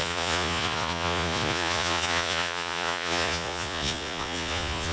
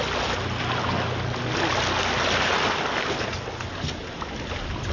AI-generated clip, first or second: first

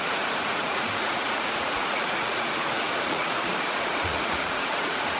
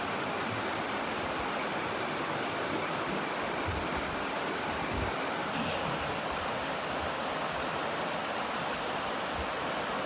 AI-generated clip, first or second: first